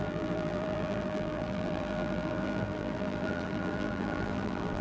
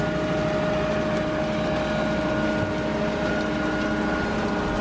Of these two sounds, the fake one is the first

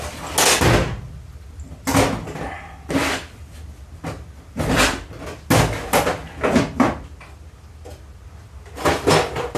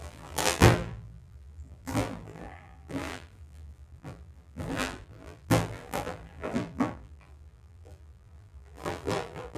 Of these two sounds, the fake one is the second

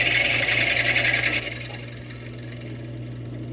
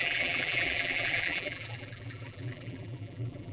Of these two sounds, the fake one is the second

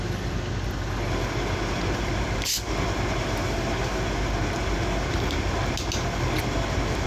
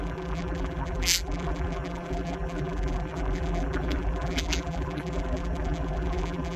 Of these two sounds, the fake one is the second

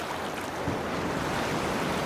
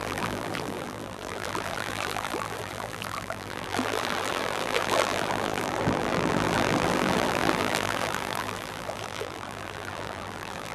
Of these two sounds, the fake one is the second